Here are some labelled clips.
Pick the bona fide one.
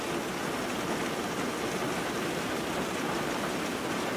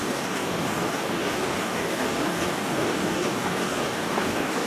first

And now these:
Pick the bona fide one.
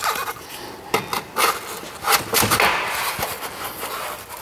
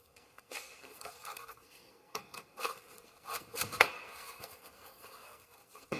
first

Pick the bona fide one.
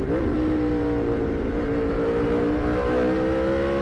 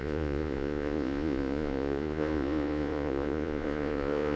first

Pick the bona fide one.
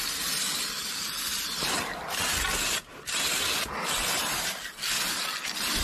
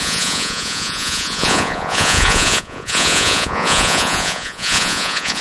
first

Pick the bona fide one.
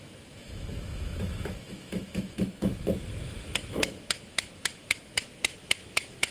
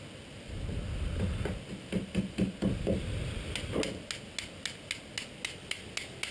second